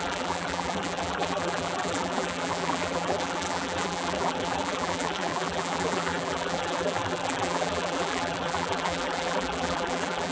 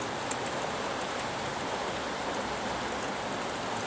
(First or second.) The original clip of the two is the second